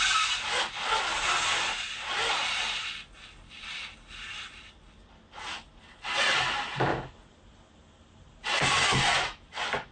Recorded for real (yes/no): yes